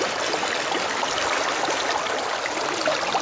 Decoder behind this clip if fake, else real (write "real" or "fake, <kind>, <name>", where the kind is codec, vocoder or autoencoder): real